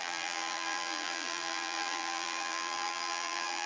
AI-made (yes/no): yes